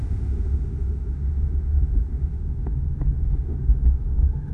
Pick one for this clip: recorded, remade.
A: remade